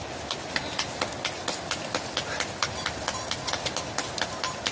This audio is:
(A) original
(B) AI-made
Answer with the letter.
A